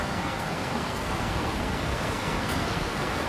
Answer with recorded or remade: remade